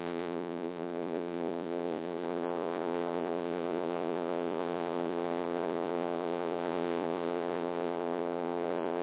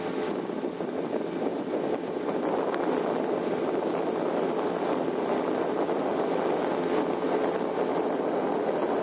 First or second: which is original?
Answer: second